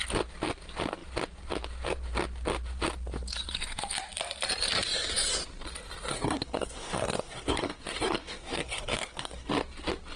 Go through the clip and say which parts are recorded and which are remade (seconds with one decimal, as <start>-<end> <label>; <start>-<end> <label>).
0.0-6.1 recorded; 6.1-9.5 remade; 9.5-10.2 recorded